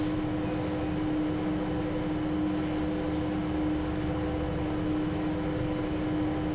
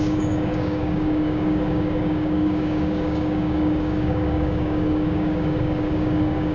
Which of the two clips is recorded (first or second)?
first